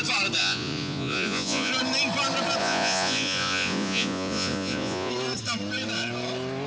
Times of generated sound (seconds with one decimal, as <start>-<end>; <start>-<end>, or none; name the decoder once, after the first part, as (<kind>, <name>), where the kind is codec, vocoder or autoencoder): 0.4-1.7 (vocoder, Vocos); 2.6-5.1